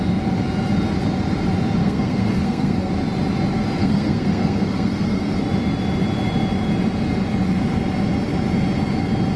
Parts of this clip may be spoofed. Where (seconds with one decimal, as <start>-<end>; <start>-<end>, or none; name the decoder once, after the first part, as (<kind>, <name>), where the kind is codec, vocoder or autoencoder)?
1.8-2.9 (codec, SNAC); 3.8-5.4

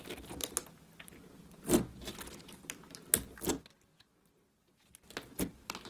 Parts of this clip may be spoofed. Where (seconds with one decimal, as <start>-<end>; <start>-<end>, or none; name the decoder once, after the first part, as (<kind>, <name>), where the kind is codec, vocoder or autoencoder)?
none

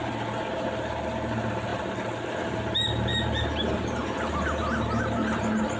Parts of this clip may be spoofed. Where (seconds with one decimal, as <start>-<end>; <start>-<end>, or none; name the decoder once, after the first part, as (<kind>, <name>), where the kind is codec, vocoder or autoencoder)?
none

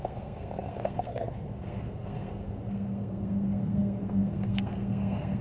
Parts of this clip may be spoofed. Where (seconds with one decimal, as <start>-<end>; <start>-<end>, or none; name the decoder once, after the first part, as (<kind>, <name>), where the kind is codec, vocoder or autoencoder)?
0.0-5.4 (codec, SNAC)

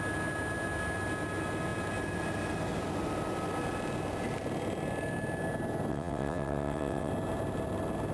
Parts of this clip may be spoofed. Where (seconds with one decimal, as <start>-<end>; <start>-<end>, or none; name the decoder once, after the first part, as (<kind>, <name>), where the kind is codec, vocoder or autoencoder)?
5.9-7.1 (vocoder, WaveNeXt)